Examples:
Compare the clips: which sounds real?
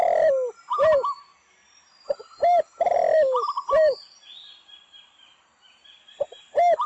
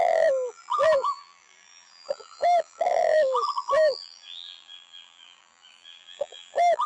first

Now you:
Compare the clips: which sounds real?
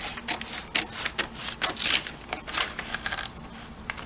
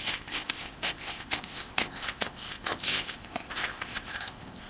first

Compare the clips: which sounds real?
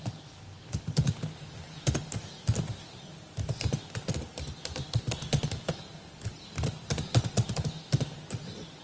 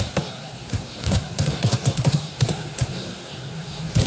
first